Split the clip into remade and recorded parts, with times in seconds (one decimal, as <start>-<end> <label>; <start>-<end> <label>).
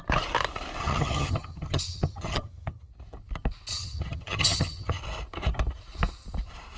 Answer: 0.0-0.8 recorded; 0.8-2.9 remade; 2.9-3.7 recorded; 3.7-5.0 remade; 5.0-6.8 recorded